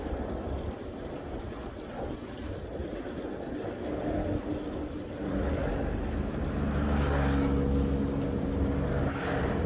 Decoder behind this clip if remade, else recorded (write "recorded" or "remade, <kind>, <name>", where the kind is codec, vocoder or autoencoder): recorded